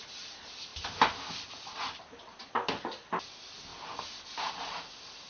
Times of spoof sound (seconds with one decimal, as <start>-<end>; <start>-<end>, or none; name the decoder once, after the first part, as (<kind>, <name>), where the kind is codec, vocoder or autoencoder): none